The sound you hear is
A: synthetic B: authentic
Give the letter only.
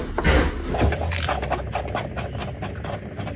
B